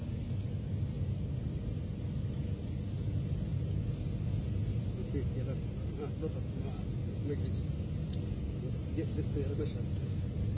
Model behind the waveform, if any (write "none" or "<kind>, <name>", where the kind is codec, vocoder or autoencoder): none